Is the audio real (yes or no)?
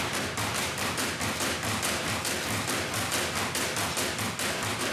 yes